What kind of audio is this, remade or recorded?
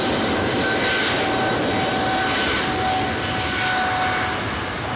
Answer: recorded